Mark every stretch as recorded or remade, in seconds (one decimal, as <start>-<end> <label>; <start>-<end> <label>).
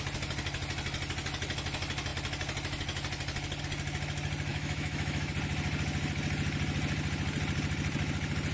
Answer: 0.0-4.5 recorded; 4.5-5.3 remade; 5.3-8.5 recorded